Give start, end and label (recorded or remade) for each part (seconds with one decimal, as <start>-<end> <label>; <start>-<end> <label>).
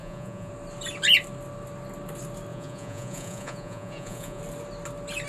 0.0-0.5 remade; 0.5-2.5 recorded; 2.5-4.4 remade; 4.4-5.3 recorded